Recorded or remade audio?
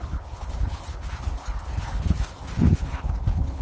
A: remade